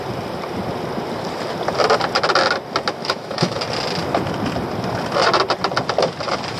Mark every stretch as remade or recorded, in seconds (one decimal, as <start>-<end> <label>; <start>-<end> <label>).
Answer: 0.0-3.0 recorded; 3.0-3.6 remade; 3.6-6.6 recorded

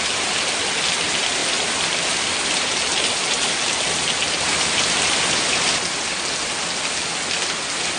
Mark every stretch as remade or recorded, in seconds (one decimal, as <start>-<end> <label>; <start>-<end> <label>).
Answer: 0.0-8.0 recorded

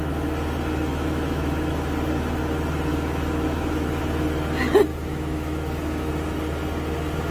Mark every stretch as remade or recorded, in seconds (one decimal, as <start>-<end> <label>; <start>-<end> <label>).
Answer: 0.0-0.9 recorded; 0.9-1.7 remade; 1.7-2.9 recorded; 2.9-4.0 remade; 4.0-4.9 recorded; 4.9-6.1 remade; 6.1-7.3 recorded

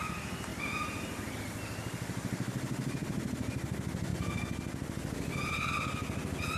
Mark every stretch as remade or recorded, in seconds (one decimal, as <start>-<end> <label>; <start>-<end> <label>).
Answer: 0.0-0.5 recorded; 0.5-1.4 remade; 1.4-6.6 recorded